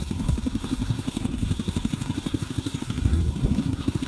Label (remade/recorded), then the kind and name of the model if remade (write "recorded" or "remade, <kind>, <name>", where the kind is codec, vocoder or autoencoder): remade, codec, SNAC